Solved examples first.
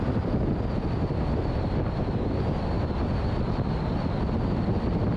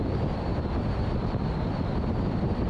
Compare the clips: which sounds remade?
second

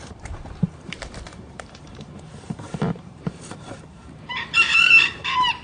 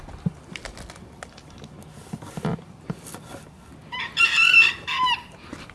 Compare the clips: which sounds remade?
first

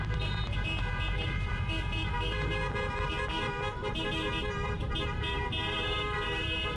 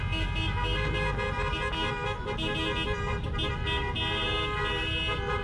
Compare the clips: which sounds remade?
first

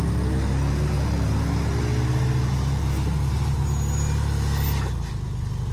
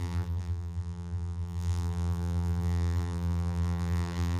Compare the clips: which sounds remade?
second